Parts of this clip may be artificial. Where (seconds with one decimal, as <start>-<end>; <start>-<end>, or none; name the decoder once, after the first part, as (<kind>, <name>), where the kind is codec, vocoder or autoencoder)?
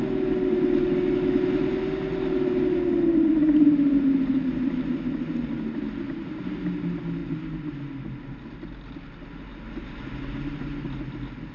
none